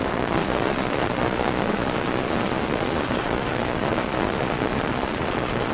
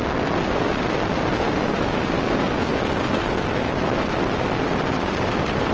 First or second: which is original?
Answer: second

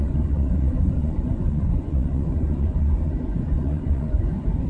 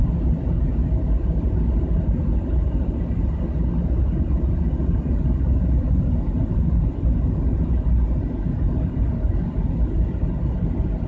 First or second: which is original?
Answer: second